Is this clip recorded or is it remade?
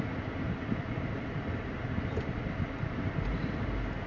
recorded